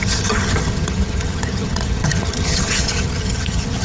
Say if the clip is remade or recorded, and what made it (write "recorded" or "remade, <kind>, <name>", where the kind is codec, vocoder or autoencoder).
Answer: remade, vocoder, HiFi-GAN